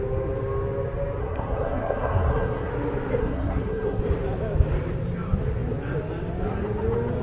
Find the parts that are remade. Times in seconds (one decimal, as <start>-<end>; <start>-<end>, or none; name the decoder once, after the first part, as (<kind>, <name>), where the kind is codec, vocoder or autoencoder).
1.2-2.7 (codec, SNAC); 3.2-4.0